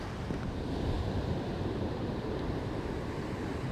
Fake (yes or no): yes